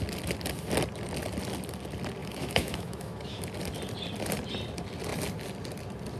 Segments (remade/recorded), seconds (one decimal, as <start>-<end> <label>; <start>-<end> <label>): 0.0-2.2 recorded; 2.2-3.4 remade; 3.4-6.2 recorded